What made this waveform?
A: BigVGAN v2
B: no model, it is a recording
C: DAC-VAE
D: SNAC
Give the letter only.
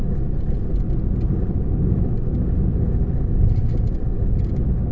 B